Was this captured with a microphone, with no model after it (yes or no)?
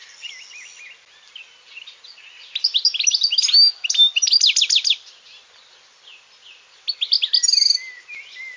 yes